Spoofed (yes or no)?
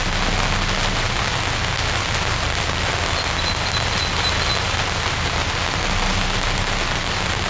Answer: no